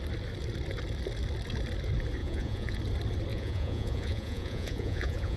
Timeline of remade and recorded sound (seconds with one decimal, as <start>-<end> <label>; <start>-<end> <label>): 0.0-2.2 recorded; 2.2-2.8 remade; 2.8-3.3 recorded; 3.3-5.4 remade